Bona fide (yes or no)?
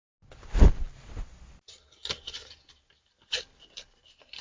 yes